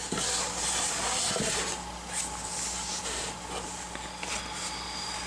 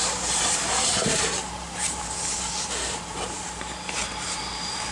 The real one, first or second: first